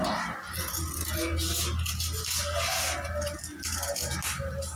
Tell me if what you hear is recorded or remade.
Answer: recorded